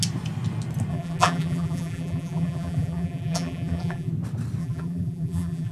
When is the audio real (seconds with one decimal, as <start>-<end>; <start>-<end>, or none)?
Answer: 0.0-0.9; 4.1-4.6